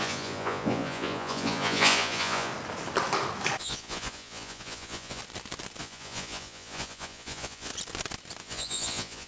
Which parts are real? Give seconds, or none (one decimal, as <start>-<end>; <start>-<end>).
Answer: 2.5-3.6; 5.2-5.8; 7.7-8.4